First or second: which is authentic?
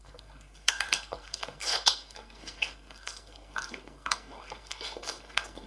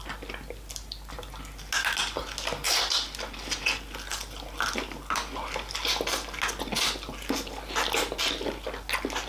second